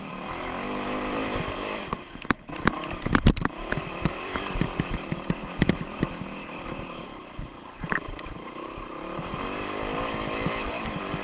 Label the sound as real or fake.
fake